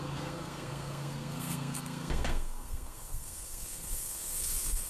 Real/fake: fake